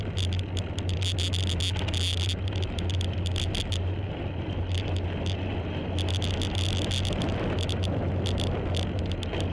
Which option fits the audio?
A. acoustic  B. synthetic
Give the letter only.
A